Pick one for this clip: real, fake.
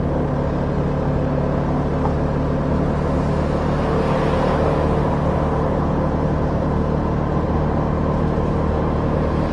real